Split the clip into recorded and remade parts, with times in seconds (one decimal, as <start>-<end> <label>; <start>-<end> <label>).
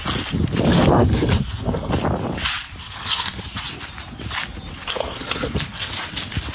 0.0-0.7 recorded; 0.7-1.9 remade; 1.9-2.8 recorded; 2.8-3.4 remade; 3.4-4.9 recorded; 4.9-5.9 remade; 5.9-6.5 recorded